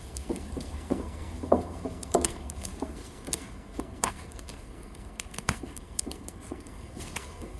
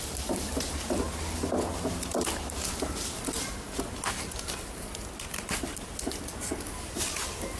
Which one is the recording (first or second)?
second